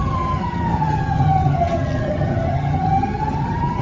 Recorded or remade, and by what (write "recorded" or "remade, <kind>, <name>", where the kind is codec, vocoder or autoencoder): remade, vocoder, HiFi-GAN